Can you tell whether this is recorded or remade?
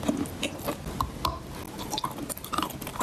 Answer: recorded